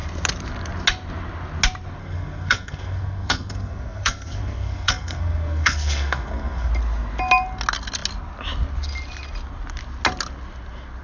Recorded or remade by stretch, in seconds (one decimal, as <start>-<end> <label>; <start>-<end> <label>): 0.0-2.0 recorded; 2.0-6.7 remade; 6.7-11.0 recorded